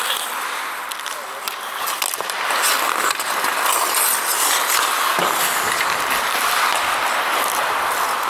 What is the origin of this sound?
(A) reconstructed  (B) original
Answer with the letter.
B